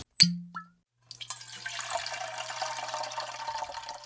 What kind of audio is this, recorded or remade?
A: recorded